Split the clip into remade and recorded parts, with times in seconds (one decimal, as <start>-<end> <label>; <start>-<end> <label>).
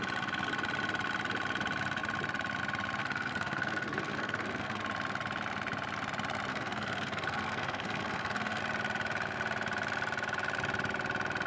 0.0-3.0 recorded; 3.0-4.8 remade; 4.8-6.5 recorded; 6.5-8.6 remade; 8.6-11.5 recorded